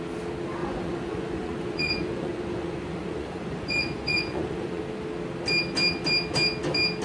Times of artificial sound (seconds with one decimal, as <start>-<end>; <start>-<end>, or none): 0.6-4.8

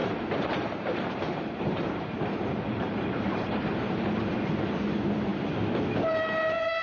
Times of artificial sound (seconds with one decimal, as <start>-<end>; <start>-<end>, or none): 0.0-4.1

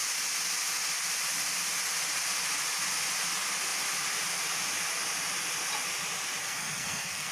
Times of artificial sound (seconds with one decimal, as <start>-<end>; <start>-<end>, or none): 6.4-7.3

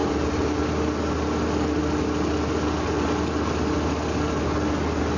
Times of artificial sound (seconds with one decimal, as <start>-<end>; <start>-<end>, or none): 0.0-0.6